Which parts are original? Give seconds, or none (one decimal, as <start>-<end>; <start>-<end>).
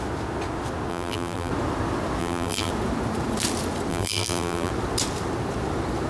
0.0-0.9; 1.5-2.2; 2.7-3.9; 4.7-6.1